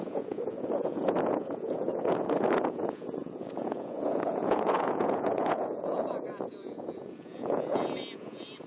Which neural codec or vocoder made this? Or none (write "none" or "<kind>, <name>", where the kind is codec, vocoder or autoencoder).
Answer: vocoder, Vocos